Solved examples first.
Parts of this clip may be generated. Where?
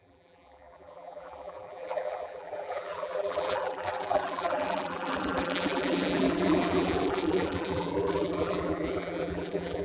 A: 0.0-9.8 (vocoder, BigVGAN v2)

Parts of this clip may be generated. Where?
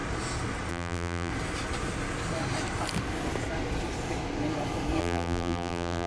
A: 0.7-1.3 (vocoder, BigVGAN v2); 5.0-6.1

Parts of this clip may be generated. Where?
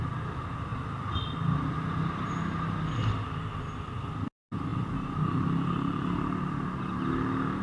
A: none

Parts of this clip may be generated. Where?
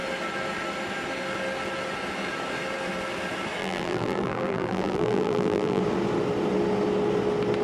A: 3.6-5.8 (vocoder, BigVGAN v2)